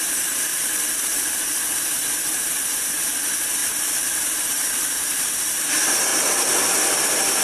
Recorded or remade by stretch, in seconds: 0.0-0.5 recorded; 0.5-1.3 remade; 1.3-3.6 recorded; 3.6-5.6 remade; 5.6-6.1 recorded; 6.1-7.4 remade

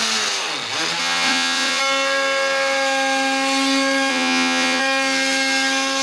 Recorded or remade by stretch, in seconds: 0.0-1.0 recorded; 1.0-1.8 remade; 1.8-4.1 recorded; 4.1-4.8 remade; 4.8-6.0 recorded

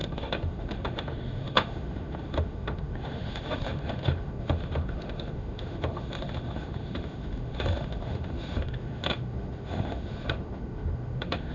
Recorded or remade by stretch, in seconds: 0.0-11.5 remade

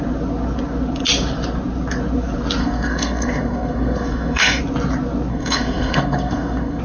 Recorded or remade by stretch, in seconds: 0.0-2.6 recorded; 2.6-4.6 remade; 4.6-5.3 recorded; 5.3-6.8 remade

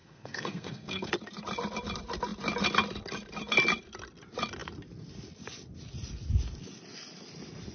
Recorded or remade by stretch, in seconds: 0.0-1.1 remade; 1.1-7.7 recorded

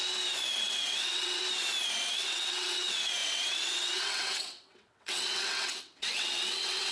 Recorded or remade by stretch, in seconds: 0.0-0.6 recorded; 0.6-1.4 remade; 1.4-2.1 recorded; 2.1-6.9 remade

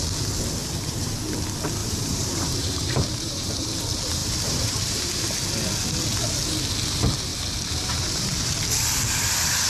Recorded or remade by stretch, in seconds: 0.0-0.6 recorded; 0.6-1.1 remade; 1.1-1.8 recorded; 1.8-3.8 remade; 3.8-4.2 recorded; 4.2-5.2 remade; 5.2-7.3 recorded; 7.3-8.5 remade; 8.5-9.7 recorded

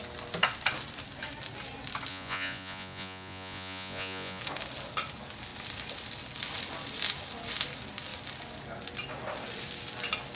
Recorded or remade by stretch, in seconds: 0.0-2.1 recorded; 2.1-4.4 remade; 4.4-10.4 recorded